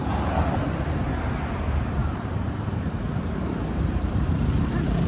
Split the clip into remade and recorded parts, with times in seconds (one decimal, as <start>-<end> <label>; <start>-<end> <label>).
0.0-0.6 remade; 0.6-2.0 recorded; 2.0-5.1 remade